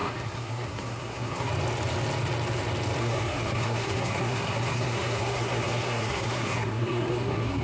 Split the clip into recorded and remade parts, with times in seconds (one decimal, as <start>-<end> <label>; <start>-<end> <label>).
0.0-1.5 remade; 1.5-3.0 recorded; 3.0-7.6 remade